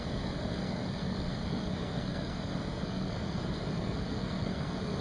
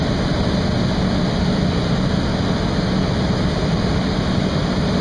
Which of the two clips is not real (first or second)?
first